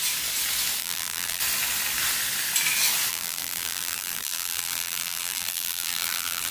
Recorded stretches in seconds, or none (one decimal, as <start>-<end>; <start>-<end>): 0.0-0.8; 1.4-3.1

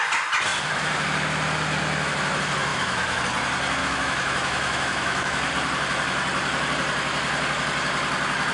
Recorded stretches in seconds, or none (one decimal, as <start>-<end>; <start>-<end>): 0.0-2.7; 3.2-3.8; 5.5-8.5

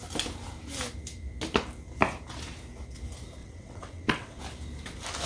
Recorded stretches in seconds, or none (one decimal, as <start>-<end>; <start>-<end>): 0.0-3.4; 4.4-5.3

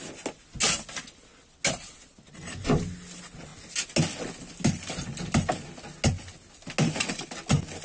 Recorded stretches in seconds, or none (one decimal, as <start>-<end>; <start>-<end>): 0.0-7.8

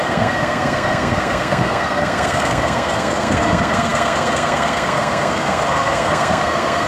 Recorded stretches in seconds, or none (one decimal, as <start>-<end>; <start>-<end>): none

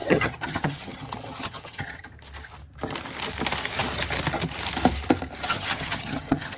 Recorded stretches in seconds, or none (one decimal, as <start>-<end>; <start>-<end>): 2.1-5.5